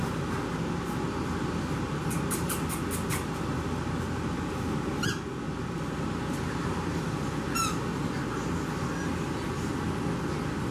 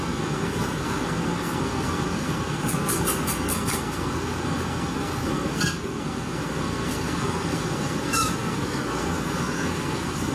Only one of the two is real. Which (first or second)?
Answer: first